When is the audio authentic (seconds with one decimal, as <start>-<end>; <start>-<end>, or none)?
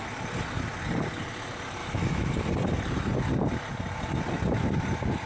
0.0-1.8; 2.3-5.3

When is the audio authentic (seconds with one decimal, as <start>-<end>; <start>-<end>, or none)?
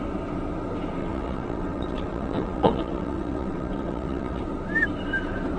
0.0-1.0; 4.4-5.6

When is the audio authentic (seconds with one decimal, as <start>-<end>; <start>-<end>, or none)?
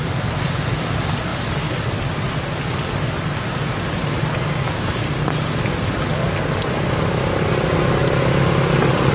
0.0-9.1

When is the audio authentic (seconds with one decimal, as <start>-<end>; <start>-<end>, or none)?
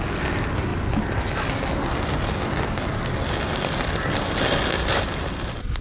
0.0-5.8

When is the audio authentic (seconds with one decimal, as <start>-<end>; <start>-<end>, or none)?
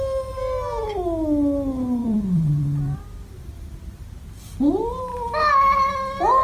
0.0-2.0; 3.0-6.4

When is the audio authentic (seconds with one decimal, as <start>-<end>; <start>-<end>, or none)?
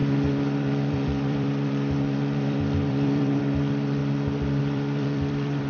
4.0-4.6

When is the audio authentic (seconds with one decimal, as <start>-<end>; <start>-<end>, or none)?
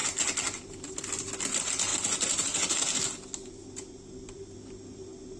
0.0-5.4